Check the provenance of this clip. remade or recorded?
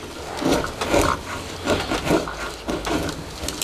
recorded